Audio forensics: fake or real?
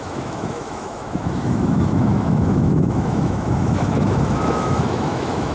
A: fake